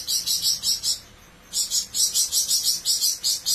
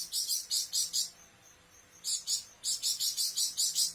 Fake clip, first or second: second